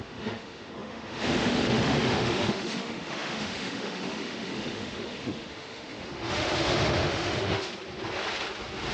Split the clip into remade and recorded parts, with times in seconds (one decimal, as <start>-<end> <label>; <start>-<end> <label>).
0.0-7.7 remade; 7.7-8.9 recorded